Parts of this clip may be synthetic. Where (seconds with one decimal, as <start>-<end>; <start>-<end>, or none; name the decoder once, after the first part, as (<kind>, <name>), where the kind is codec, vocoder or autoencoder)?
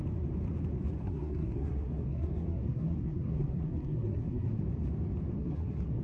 1.0-4.6 (codec, SNAC); 5.3-6.0